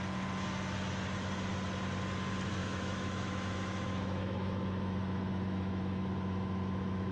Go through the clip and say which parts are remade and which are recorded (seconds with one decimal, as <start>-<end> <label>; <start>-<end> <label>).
0.0-2.6 recorded; 2.6-7.1 remade